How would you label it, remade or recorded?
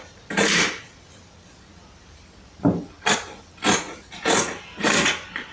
recorded